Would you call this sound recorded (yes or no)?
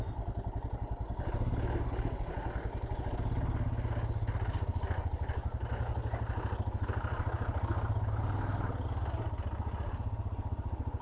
yes